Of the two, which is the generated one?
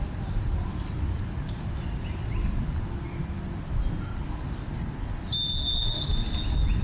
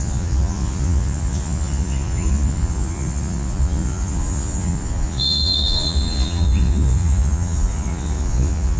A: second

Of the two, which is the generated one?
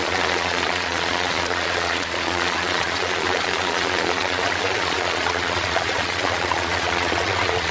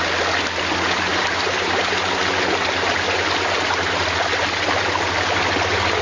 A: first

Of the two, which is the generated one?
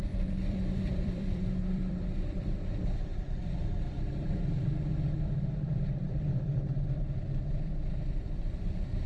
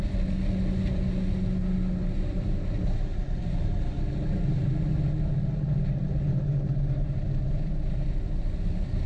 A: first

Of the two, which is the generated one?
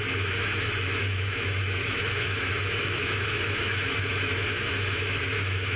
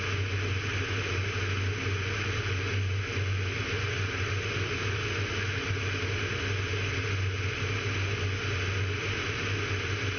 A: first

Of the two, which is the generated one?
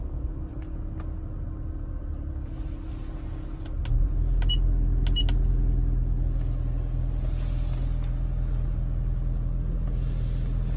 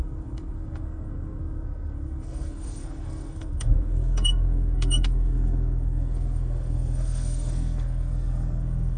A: second